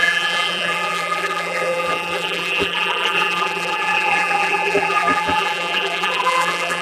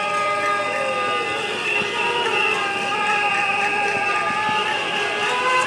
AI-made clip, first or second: first